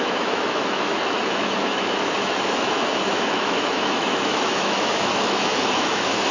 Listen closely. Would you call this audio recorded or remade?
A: remade